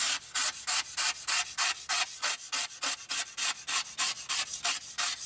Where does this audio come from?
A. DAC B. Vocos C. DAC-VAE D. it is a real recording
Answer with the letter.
D